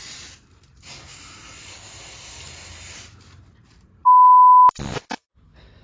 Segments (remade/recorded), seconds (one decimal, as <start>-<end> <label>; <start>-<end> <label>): 0.0-5.8 recorded